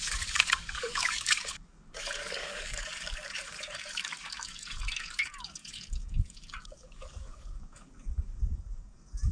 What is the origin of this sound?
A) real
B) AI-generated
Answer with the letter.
B